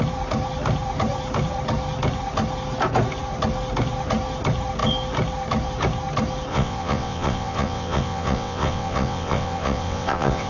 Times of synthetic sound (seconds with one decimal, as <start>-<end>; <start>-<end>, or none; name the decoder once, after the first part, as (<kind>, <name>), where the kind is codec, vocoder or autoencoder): 6.5-10.5 (vocoder, WaveNeXt)